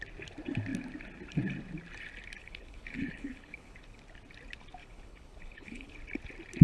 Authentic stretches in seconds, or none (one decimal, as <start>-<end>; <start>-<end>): 0.0-2.4; 4.0-4.8; 6.0-6.6